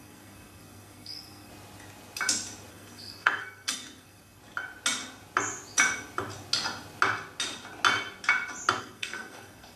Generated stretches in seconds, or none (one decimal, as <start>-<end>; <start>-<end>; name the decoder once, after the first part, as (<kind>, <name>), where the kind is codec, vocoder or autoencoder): 0.0-1.5 (codec, SNAC); 2.7-4.4; 8.8-9.8